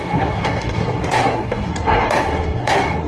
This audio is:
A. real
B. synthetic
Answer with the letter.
B